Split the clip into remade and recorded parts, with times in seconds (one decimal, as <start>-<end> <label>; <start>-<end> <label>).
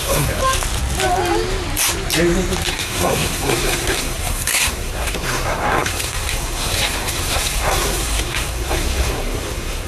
0.0-0.4 remade; 0.4-2.7 recorded; 2.7-9.9 remade